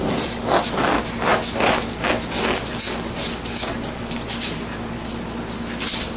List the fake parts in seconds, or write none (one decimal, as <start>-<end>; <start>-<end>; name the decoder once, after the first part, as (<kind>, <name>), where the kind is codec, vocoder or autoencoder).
none